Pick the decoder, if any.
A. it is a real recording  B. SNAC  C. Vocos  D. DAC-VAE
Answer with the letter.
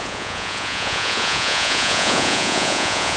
C